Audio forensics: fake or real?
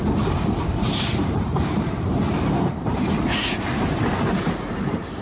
fake